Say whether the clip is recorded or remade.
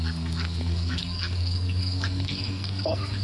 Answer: remade